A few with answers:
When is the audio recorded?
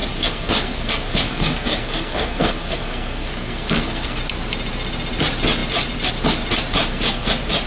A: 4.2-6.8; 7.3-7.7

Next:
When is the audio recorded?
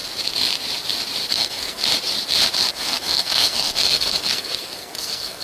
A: 0.0-1.3; 1.8-2.7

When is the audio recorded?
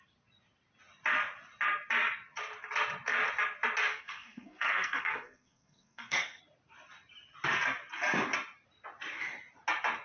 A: 0.0-3.9; 6.4-10.0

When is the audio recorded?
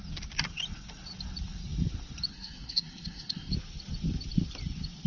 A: 0.0-2.3; 3.5-5.1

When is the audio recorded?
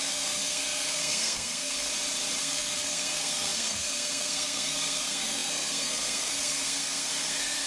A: 1.9-2.4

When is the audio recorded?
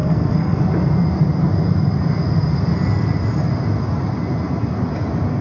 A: 0.6-5.4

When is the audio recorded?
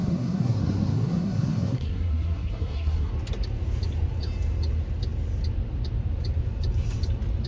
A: 3.1-7.5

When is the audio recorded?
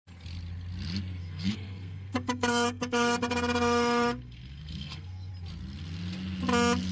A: 0.0-1.2; 5.3-6.9